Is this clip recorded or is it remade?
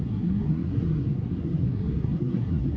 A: remade